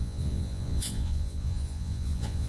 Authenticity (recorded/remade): remade